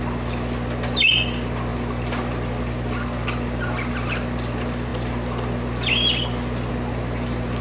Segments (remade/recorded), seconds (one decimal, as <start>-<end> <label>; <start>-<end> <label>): 0.0-7.6 recorded